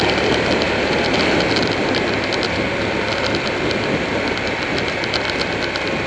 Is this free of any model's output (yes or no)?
yes